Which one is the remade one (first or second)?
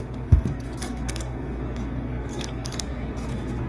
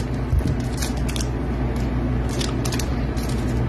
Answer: first